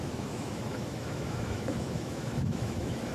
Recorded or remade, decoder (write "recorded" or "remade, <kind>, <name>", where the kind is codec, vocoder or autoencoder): remade, autoencoder, DAC-VAE